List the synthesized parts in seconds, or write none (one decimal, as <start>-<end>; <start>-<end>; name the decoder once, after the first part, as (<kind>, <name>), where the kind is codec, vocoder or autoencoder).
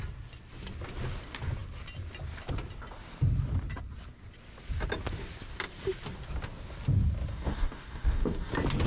7.3-8.5 (codec, DAC)